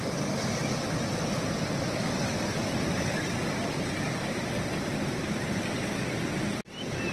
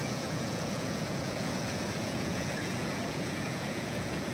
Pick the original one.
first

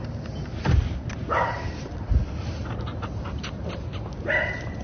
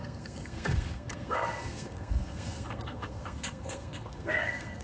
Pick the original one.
first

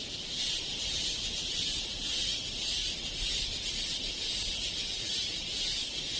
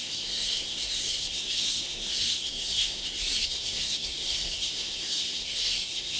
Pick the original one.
first